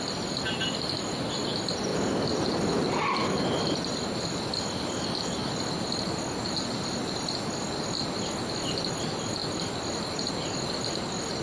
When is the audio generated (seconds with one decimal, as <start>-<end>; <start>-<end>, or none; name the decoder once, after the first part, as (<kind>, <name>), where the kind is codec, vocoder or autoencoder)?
none